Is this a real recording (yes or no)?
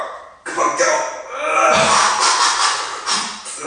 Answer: yes